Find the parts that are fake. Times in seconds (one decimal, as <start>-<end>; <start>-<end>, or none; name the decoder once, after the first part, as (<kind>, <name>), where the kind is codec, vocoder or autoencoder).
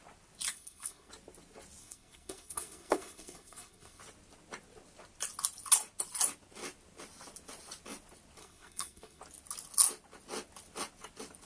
0.5-1.1 (codec, SNAC); 1.8-4.0; 8.4-9.2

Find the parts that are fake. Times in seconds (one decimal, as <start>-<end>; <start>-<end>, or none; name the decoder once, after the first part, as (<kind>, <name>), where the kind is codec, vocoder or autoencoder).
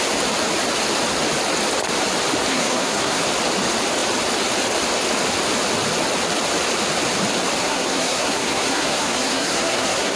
2.5-3.2 (codec, SNAC); 7.6-10.2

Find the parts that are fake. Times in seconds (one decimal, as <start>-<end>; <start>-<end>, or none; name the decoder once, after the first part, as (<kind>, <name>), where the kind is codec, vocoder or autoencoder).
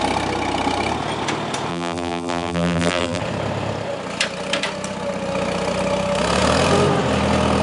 1.7-3.2 (vocoder, BigVGAN v2)